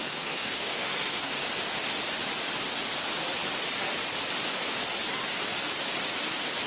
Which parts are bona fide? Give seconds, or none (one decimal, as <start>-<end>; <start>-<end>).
1.3-6.7